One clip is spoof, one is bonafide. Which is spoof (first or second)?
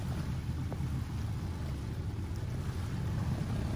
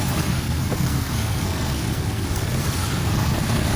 second